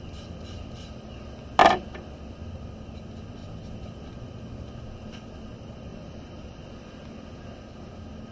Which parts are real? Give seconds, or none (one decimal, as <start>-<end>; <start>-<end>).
0.0-1.6; 2.4-5.9; 7.9-8.3